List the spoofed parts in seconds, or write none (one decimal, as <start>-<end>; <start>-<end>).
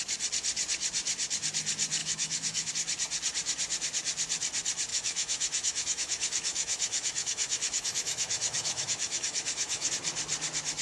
2.0-2.7; 4.9-9.9